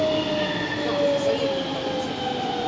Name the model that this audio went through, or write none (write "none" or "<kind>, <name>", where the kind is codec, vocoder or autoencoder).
none